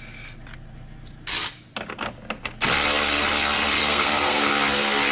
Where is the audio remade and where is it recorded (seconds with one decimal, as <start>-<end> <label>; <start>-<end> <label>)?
0.0-3.8 recorded; 3.8-4.5 remade; 4.5-5.1 recorded